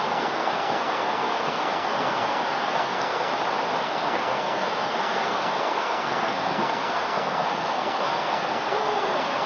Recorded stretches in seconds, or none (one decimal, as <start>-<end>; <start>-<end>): 3.3-3.8